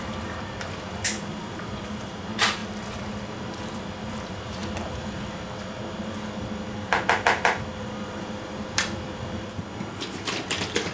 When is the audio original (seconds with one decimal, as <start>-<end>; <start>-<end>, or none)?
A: 4.6-8.0